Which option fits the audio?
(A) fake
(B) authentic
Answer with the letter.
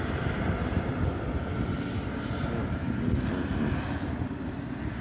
B